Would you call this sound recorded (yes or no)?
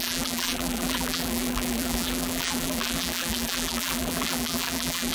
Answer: no